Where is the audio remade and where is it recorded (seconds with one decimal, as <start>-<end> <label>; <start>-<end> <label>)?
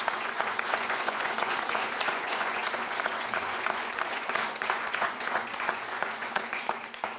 0.0-7.2 remade